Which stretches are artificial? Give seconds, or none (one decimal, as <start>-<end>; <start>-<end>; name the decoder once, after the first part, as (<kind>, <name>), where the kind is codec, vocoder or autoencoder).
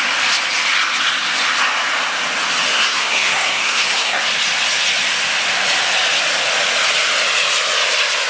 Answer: 2.7-4.2 (codec, SNAC)